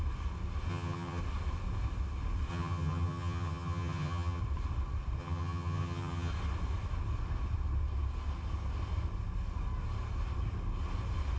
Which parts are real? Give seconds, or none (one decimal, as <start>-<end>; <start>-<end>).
0.0-0.7; 1.2-2.5; 4.4-5.2; 6.3-11.4